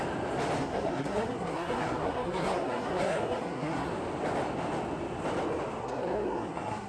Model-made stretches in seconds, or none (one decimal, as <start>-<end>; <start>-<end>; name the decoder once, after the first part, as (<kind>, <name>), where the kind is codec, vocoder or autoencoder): 0.6-3.9 (codec, SNAC); 5.8-6.9